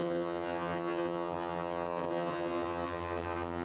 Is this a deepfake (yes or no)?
yes